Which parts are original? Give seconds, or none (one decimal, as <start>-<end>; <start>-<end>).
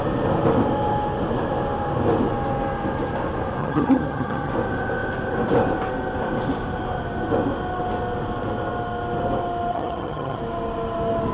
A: 0.0-3.6; 4.5-9.7; 10.4-11.3